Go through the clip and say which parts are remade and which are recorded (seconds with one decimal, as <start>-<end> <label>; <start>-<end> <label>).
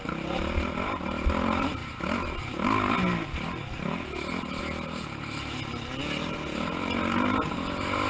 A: 0.0-8.1 recorded